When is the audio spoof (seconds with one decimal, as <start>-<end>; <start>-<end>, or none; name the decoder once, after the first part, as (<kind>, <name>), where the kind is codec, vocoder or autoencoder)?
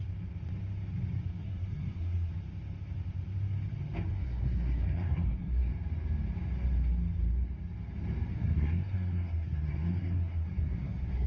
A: 1.4-2.3 (codec, SNAC); 4.1-5.7; 8.3-11.3